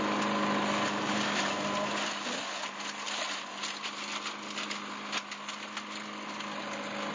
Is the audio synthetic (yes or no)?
no